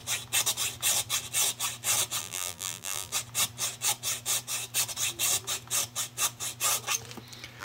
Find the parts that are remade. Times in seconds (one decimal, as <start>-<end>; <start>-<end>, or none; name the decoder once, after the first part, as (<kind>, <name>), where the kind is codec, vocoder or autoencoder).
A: 2.2-3.1 (vocoder, BigVGAN v2)